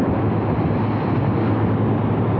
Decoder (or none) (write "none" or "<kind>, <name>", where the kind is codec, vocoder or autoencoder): none